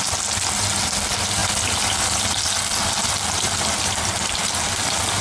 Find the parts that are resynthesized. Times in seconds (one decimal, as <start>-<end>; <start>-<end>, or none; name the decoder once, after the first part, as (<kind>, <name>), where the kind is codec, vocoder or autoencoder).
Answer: none